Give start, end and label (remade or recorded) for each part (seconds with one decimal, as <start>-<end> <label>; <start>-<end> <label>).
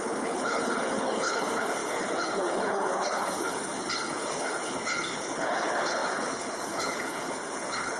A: 0.0-8.0 remade